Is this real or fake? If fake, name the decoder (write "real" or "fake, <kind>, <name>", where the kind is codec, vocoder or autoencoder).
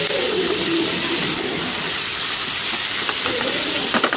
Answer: real